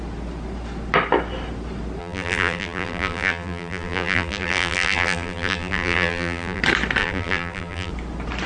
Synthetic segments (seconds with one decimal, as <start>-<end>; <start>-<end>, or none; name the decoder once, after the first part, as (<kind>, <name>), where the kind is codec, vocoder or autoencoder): 2.0-6.6 (vocoder, BigVGAN v2); 7.0-7.9